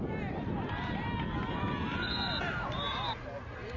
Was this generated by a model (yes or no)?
no